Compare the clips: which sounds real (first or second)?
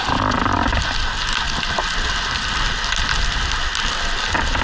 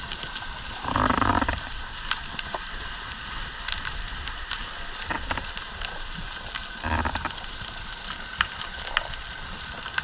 first